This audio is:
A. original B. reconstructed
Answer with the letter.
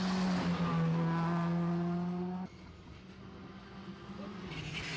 A